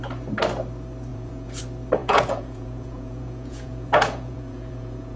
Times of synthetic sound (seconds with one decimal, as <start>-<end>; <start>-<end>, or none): 1.1-1.6; 2.0-5.2